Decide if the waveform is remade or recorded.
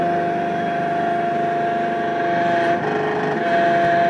recorded